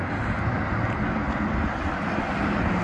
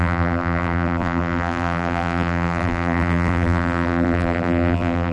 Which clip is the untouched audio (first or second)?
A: first